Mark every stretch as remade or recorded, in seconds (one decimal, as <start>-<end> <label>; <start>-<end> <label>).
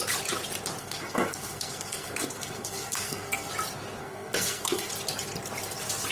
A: 0.0-0.8 recorded; 0.8-3.5 remade; 3.5-4.0 recorded; 4.0-4.9 remade; 4.9-6.1 recorded